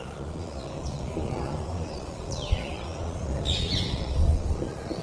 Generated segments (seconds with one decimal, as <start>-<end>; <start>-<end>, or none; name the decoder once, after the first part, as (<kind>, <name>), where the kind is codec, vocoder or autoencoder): 0.0-5.0 (vocoder, Vocos)